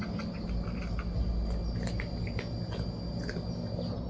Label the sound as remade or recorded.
recorded